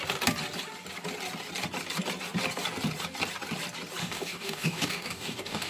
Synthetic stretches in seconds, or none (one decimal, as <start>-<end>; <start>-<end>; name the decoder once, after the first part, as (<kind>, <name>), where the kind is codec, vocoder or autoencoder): 4.0-5.7 (codec, DAC)

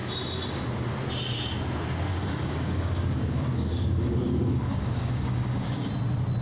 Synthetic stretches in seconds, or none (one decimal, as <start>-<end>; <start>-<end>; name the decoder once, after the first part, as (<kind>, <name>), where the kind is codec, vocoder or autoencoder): 2.1-5.9 (codec, DAC)

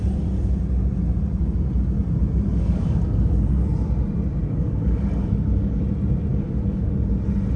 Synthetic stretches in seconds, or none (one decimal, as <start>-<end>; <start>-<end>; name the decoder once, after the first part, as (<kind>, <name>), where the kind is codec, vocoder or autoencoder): 2.5-3.4 (codec, DAC); 4.5-5.8; 6.3-6.9

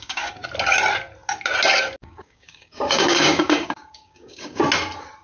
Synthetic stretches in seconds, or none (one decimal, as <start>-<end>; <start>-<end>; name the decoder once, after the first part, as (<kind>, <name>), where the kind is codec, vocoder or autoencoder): 0.0-0.4 (codec, DAC); 2.0-4.6